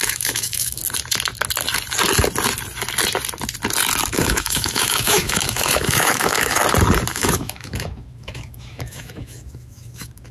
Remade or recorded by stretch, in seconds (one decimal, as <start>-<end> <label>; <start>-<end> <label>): 0.0-0.8 remade; 0.8-4.1 recorded; 4.1-6.6 remade; 6.6-7.1 recorded; 7.1-10.3 remade